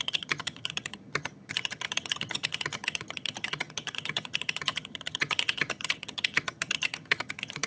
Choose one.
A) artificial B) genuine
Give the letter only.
A